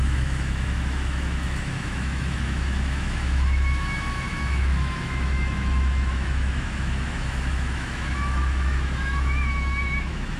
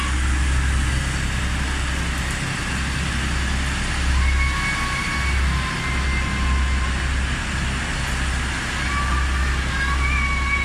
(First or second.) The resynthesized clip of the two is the first